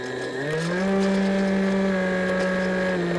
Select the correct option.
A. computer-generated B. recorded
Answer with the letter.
B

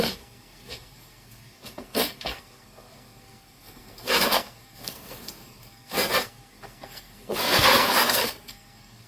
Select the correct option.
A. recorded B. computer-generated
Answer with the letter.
B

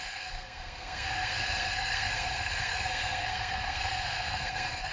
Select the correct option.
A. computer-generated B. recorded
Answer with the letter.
A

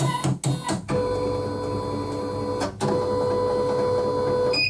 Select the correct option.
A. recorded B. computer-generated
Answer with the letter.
A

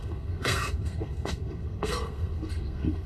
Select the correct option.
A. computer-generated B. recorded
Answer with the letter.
A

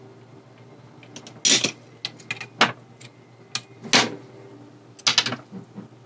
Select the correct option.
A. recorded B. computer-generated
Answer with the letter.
A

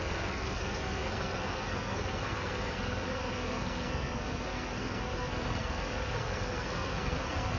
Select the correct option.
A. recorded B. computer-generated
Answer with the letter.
B